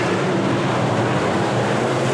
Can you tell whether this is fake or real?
fake